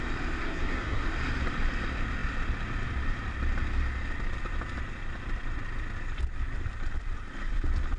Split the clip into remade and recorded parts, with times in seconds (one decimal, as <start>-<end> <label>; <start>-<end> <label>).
0.0-0.4 recorded; 0.4-1.1 remade; 1.1-8.0 recorded